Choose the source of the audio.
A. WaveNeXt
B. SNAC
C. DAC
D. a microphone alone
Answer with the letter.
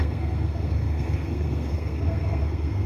B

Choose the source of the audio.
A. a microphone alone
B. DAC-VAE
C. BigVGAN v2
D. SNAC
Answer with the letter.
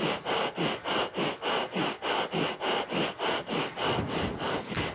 A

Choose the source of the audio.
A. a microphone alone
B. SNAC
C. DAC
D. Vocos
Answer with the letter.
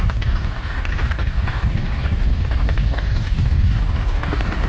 C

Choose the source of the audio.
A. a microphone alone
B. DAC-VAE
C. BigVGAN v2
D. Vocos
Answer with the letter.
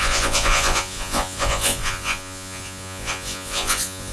D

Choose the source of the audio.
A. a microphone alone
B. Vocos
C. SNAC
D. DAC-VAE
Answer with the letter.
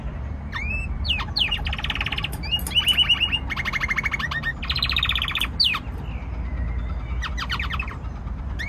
A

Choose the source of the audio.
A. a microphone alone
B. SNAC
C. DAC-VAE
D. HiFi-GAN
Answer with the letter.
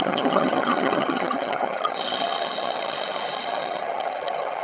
D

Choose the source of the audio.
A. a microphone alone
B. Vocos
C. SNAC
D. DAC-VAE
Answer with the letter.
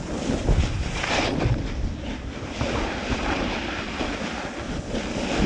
A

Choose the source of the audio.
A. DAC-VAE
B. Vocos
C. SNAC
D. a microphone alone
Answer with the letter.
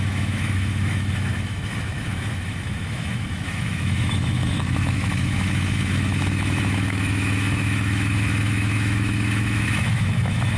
A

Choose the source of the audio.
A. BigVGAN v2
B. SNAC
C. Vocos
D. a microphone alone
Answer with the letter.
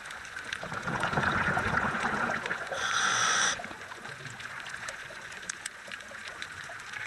C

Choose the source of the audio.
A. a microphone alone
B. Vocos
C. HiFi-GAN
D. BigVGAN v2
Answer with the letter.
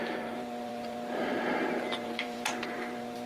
D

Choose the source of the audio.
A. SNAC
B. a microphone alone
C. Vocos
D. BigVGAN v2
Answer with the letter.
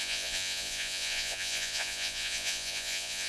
C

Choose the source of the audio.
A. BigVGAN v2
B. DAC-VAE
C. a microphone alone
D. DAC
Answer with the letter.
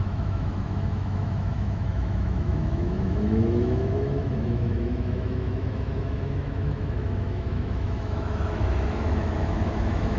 B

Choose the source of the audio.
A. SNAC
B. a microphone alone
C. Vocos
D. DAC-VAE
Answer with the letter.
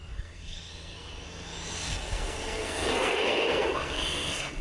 A